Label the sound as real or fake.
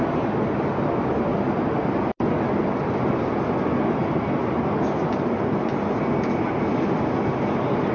real